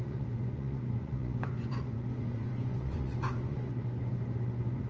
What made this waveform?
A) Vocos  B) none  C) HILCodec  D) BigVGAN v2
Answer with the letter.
A